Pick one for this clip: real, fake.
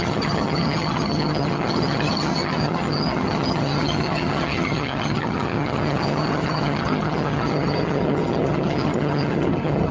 fake